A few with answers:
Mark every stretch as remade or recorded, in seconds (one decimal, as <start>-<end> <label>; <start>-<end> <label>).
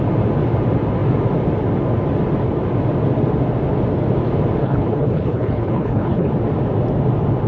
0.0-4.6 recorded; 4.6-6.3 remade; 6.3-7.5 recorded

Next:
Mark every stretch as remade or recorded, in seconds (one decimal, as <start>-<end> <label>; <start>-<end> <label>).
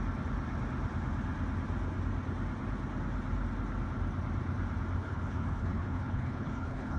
0.0-5.0 recorded; 5.0-7.0 remade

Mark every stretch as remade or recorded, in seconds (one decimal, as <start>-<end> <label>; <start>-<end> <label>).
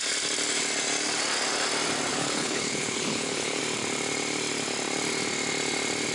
0.0-2.1 recorded; 2.1-3.6 remade; 3.6-6.1 recorded